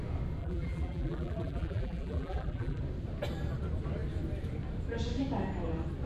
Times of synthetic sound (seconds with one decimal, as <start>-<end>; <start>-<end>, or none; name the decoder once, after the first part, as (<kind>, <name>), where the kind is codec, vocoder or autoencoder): 0.4-2.8 (vocoder, BigVGAN v2)